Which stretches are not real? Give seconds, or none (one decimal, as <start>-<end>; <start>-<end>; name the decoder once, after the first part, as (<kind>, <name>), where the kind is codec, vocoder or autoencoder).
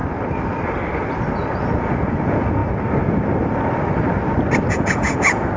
1.8-2.6 (vocoder, Vocos); 4.7-5.6